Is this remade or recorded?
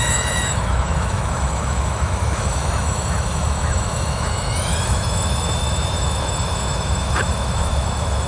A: remade